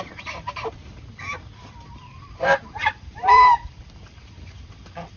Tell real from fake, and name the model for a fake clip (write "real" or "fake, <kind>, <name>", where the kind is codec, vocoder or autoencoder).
fake, vocoder, BigVGAN v2